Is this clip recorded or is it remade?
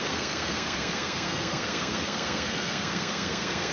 remade